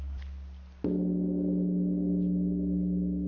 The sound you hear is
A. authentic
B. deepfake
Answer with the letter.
A